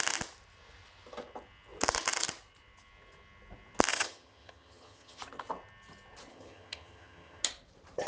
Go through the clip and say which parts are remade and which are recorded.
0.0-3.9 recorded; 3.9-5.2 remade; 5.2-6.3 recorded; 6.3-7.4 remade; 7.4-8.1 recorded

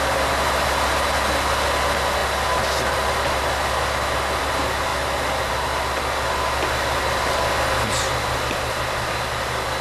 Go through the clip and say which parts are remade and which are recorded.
0.0-9.8 recorded

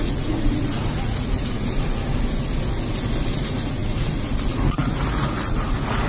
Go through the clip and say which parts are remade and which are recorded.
0.0-2.0 remade; 2.0-3.3 recorded; 3.3-6.1 remade

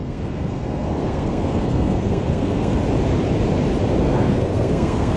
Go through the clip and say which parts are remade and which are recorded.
0.0-2.8 remade; 2.8-4.0 recorded; 4.0-5.2 remade

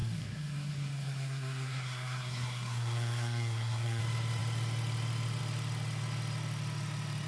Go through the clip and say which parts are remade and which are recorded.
0.0-4.0 remade; 4.0-7.3 recorded

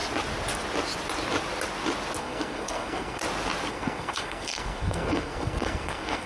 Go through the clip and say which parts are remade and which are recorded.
0.0-2.2 recorded; 2.2-3.2 remade; 3.2-3.7 recorded; 3.7-6.3 remade

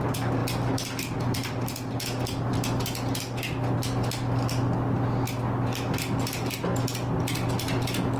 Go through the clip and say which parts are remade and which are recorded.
0.0-8.2 recorded

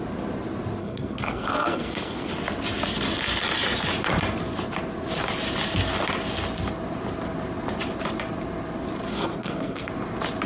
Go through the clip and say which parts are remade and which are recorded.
0.0-0.8 recorded; 0.8-2.3 remade; 2.3-9.1 recorded; 9.1-9.9 remade; 9.9-10.5 recorded